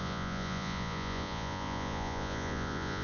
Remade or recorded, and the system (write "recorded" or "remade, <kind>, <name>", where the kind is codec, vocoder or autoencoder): remade, vocoder, Vocos